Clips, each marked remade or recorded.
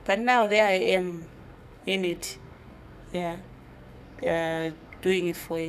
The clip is remade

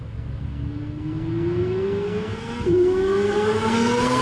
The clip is remade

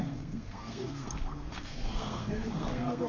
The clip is remade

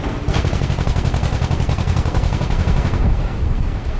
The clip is remade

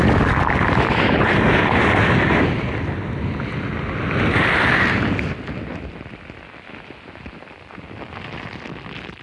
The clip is recorded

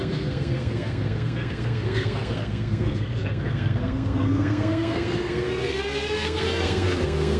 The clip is remade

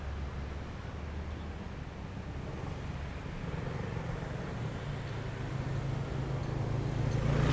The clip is recorded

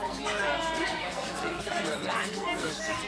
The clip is remade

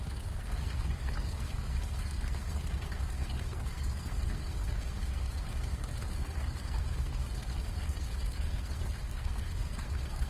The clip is remade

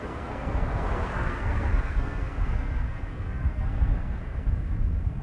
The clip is remade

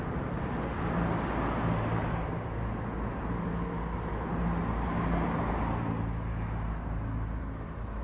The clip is recorded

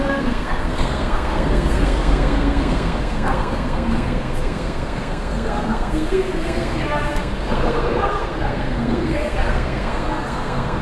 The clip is remade